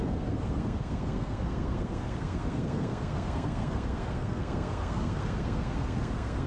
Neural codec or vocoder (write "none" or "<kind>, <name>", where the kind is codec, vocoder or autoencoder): codec, SNAC